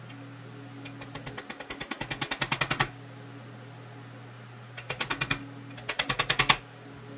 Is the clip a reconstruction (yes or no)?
no